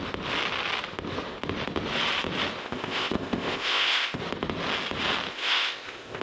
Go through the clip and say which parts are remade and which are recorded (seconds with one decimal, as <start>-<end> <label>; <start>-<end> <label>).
0.0-2.6 recorded; 2.6-4.2 remade; 4.2-5.3 recorded; 5.3-6.2 remade